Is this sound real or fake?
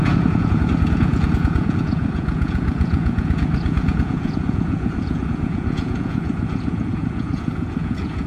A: fake